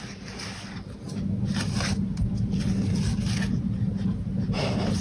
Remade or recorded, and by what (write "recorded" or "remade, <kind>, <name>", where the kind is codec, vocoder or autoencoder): recorded